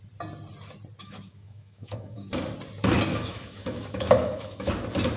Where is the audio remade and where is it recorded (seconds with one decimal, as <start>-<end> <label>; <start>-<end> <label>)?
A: 0.0-1.0 recorded; 1.0-2.3 remade; 2.3-3.1 recorded; 3.1-4.7 remade; 4.7-5.2 recorded